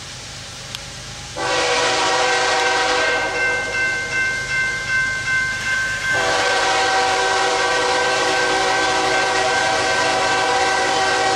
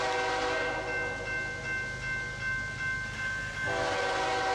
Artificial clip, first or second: first